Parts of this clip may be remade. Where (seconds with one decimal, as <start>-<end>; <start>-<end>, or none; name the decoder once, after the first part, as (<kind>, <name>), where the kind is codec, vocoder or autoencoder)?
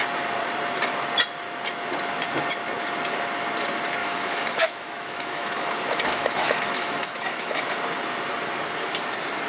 4.0-7.6 (autoencoder, DAC-VAE)